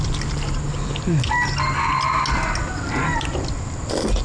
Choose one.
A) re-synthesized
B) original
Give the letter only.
B